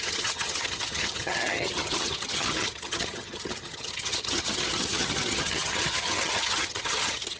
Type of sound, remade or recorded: remade